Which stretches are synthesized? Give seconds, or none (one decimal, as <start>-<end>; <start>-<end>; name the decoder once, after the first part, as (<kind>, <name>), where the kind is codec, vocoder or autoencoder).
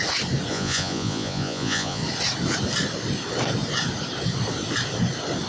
0.5-2.0 (vocoder, Vocos)